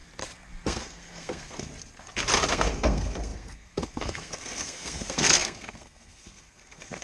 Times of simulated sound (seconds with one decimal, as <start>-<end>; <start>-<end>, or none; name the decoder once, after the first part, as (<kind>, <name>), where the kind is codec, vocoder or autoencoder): 0.6-1.7 (codec, SNAC); 2.5-7.0